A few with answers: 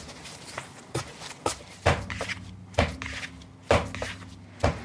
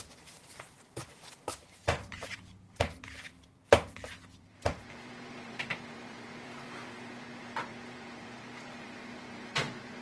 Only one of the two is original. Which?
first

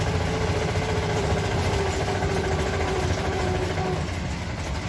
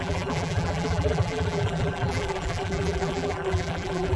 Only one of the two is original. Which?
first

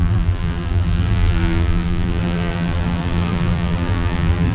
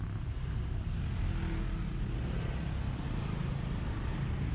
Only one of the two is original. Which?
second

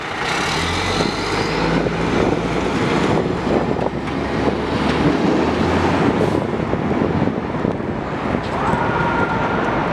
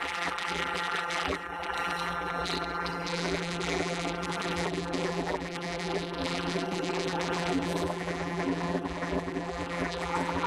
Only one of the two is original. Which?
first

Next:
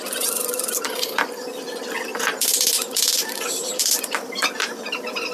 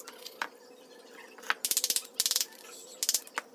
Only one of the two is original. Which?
second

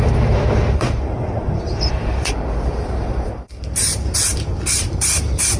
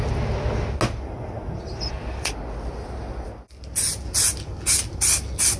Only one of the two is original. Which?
second